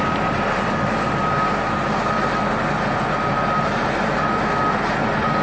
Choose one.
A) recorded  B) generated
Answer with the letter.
A